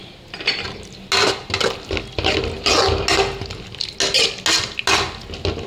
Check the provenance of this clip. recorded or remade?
recorded